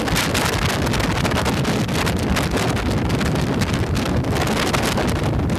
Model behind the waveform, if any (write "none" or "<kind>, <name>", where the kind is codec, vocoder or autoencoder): none